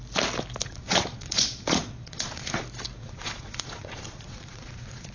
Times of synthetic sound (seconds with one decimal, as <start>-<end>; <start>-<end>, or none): 0.6-2.6; 3.0-5.1